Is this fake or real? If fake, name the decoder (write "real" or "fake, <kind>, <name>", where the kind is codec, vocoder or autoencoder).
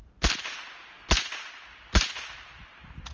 real